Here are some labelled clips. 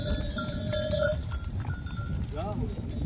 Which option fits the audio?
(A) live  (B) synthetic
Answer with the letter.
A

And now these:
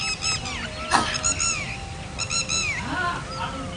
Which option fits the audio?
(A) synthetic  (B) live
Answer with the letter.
B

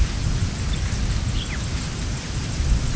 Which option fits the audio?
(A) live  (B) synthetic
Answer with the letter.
A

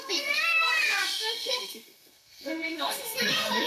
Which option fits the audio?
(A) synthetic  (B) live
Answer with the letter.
A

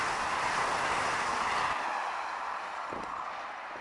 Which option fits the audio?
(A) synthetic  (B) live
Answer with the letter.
B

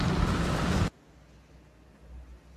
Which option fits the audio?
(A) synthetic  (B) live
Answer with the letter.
B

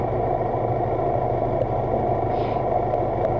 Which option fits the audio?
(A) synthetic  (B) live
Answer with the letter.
B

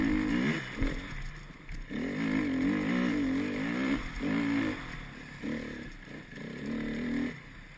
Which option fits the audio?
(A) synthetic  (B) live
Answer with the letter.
B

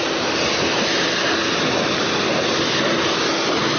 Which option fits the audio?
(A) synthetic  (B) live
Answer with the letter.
B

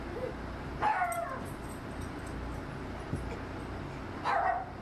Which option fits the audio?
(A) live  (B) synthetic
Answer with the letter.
A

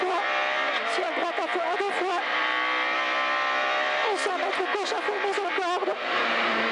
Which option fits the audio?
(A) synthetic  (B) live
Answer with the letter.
B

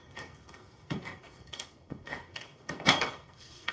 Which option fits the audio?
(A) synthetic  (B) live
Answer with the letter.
A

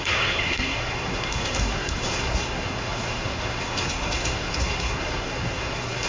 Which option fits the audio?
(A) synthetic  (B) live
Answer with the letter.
A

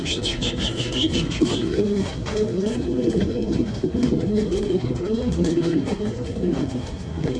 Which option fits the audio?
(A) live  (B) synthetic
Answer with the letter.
B